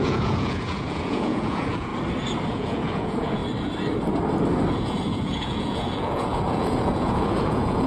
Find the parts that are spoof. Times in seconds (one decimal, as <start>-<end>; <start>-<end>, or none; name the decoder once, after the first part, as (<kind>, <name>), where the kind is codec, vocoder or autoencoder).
0.0-1.9 (vocoder, Vocos); 2.5-3.4; 4.7-7.9